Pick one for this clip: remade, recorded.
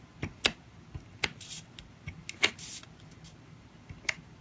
recorded